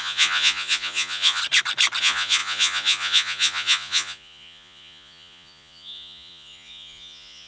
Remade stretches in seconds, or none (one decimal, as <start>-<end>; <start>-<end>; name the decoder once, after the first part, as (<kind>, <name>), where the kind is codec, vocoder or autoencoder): 0.0-1.4 (vocoder, Vocos); 2.0-7.5